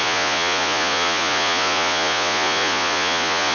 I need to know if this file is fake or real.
fake